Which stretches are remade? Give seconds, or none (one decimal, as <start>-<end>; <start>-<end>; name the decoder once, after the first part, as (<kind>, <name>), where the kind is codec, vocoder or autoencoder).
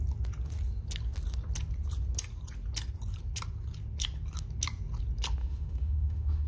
5.4-6.5 (autoencoder, DAC-VAE)